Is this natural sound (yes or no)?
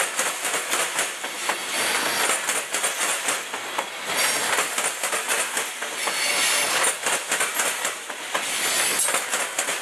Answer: yes